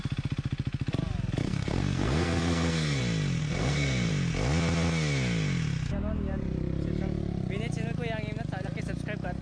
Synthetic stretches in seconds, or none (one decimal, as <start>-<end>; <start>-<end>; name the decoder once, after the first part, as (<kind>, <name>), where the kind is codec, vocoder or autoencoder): 1.4-3.0 (codec, SNAC); 3.4-4.1